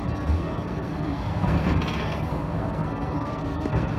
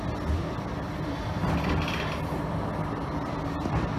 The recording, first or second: second